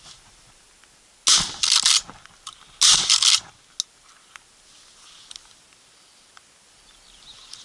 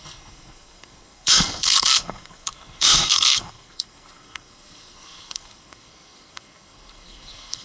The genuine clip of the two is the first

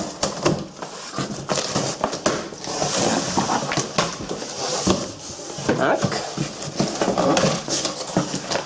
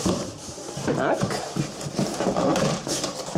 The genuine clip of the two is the first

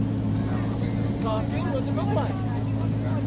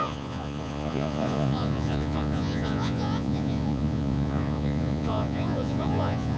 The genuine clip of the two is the first